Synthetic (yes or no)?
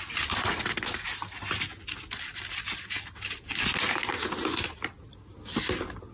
no